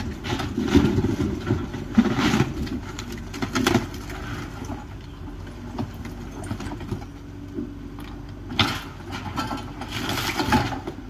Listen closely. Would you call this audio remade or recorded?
recorded